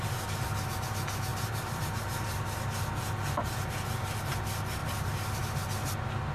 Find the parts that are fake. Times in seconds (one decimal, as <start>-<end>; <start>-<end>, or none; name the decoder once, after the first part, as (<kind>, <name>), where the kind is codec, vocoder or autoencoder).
1.3-1.8 (vocoder, BigVGAN v2); 4.8-5.4